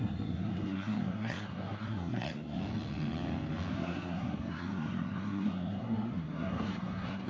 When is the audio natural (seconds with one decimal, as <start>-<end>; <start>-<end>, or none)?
2.6-3.7